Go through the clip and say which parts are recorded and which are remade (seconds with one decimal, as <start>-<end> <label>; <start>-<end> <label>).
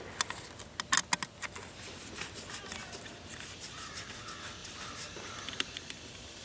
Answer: 0.0-2.8 recorded; 2.8-4.1 remade; 4.1-4.6 recorded; 4.6-5.8 remade; 5.8-6.4 recorded